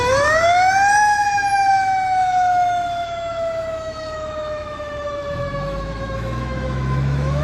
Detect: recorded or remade remade